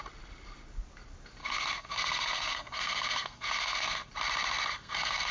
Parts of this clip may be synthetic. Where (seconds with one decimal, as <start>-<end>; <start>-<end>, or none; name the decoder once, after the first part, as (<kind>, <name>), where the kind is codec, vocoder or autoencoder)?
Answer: 1.4-4.1 (codec, SNAC); 4.7-5.3